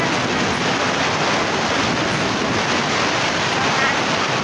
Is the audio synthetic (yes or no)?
no